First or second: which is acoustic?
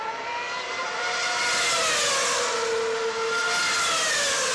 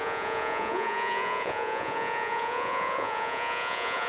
first